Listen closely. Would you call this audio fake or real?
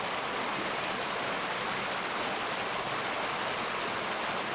real